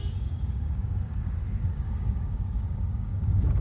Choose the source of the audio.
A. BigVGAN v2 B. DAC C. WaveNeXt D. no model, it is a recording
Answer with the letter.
B